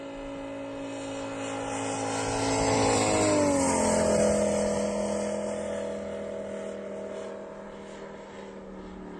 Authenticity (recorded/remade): recorded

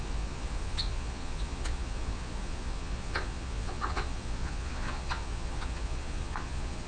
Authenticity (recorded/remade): remade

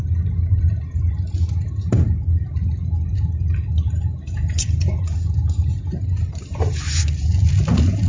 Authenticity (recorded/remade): recorded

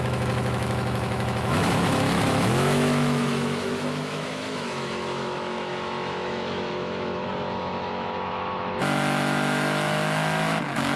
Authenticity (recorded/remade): remade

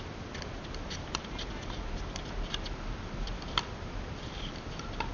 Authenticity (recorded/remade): recorded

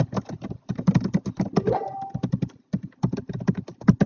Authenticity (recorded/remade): recorded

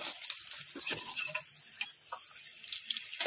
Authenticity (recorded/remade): recorded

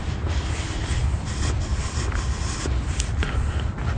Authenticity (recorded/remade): recorded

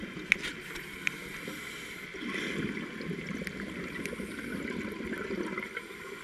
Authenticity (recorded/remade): recorded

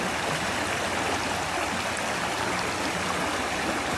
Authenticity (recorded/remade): recorded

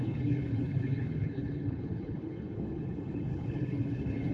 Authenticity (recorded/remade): remade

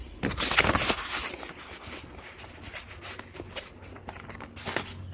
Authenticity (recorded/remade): recorded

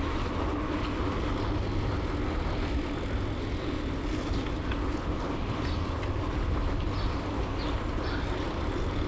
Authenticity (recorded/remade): recorded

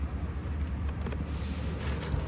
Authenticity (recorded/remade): recorded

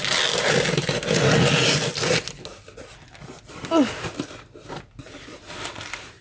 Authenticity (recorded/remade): recorded